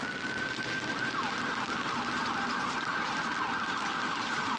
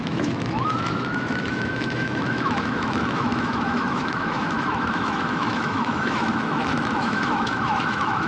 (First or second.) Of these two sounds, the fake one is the second